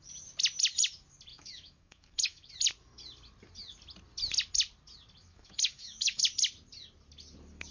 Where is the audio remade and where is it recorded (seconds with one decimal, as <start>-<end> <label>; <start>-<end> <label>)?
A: 0.0-1.3 recorded; 1.3-2.5 remade; 2.5-5.2 recorded; 5.2-6.2 remade; 6.2-7.7 recorded